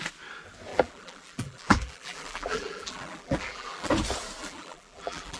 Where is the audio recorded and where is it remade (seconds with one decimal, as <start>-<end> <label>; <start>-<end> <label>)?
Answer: 0.0-0.7 recorded; 0.7-3.9 remade; 3.9-4.4 recorded; 4.4-5.4 remade

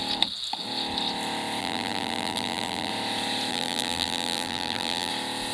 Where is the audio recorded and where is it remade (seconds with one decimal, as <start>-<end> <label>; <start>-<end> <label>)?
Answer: 0.0-1.6 recorded; 1.6-2.9 remade; 2.9-3.5 recorded; 3.5-5.1 remade; 5.1-5.5 recorded

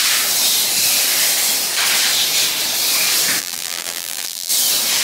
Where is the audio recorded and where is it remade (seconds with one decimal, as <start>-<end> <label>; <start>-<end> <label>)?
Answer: 0.0-3.4 recorded; 3.4-4.5 remade; 4.5-5.0 recorded

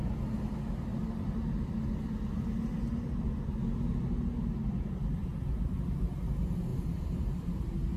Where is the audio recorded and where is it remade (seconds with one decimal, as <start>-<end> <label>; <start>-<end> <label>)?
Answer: 0.0-6.7 recorded; 6.7-7.3 remade; 7.3-8.0 recorded

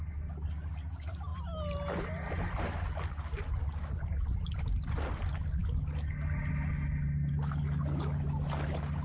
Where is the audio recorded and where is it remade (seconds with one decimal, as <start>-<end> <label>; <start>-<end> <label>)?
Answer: 0.0-9.0 recorded

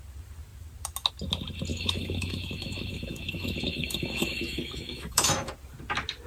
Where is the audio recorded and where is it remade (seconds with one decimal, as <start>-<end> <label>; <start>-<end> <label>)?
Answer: 0.0-1.7 recorded; 1.7-5.5 remade; 5.5-6.3 recorded

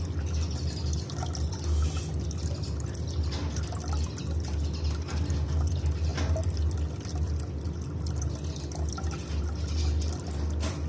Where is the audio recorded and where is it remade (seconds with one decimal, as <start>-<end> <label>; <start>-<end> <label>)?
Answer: 0.0-10.9 recorded

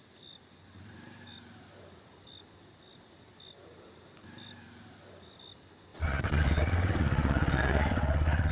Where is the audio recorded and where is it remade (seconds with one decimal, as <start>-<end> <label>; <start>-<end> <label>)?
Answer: 0.0-5.9 recorded; 5.9-8.5 remade